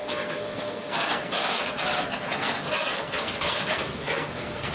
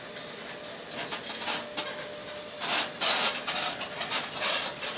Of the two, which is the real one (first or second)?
second